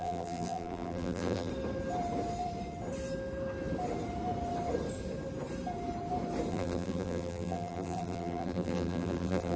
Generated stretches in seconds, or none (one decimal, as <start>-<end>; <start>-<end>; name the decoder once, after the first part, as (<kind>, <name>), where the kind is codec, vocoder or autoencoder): 0.0-1.5 (vocoder, BigVGAN v2); 6.5-9.6